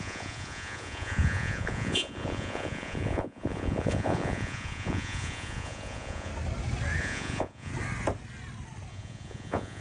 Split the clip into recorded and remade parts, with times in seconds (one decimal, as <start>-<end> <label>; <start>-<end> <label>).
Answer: 0.0-6.3 remade; 6.3-7.0 recorded; 7.0-7.7 remade; 7.7-8.9 recorded; 8.9-9.8 remade